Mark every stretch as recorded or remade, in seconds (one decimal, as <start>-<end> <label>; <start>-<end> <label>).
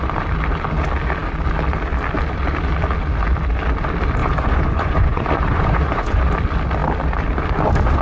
0.0-4.2 recorded; 4.2-6.2 remade; 6.2-8.0 recorded